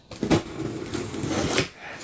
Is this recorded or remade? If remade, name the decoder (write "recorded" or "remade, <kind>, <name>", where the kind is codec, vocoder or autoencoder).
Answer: recorded